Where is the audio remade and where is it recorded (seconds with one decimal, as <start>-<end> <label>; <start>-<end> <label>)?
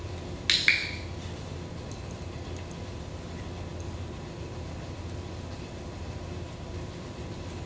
0.0-7.7 recorded